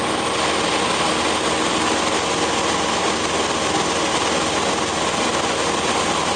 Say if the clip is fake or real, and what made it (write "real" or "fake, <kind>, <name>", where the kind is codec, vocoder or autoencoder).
real